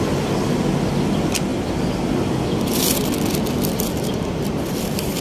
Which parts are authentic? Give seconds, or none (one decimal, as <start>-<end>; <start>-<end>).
0.0-5.2